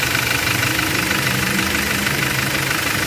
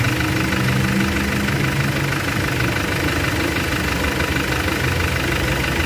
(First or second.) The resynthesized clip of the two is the first